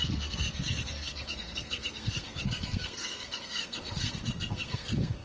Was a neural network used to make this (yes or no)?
yes